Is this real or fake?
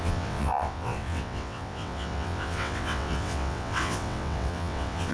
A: fake